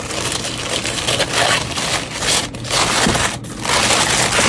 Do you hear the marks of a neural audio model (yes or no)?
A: no